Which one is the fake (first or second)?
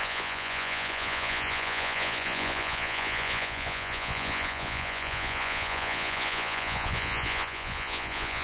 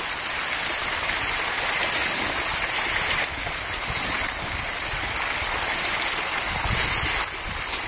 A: first